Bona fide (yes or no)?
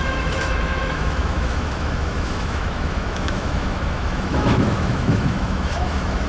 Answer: no